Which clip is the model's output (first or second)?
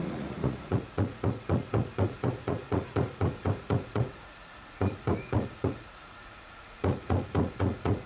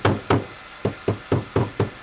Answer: first